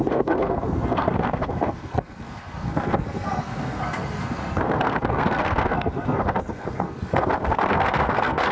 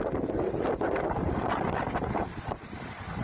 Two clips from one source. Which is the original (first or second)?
second